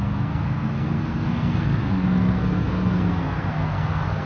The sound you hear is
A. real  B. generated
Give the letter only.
B